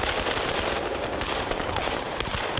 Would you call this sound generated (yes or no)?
no